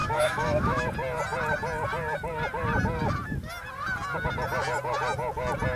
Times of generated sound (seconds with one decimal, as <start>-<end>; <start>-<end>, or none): 0.0-0.9